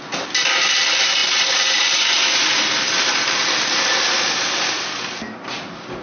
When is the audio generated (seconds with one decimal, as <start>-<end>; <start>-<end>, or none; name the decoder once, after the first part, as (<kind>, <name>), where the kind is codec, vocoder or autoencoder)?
none